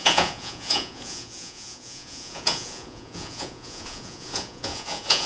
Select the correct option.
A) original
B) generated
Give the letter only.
B